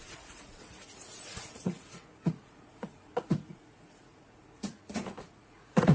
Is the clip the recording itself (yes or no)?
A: no